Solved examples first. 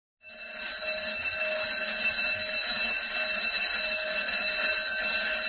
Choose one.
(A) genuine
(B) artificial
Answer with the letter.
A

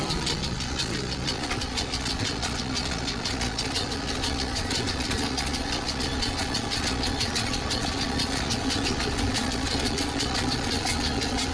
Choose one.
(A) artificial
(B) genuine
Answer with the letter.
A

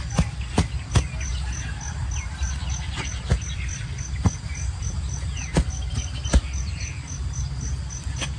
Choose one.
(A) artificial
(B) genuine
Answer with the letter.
B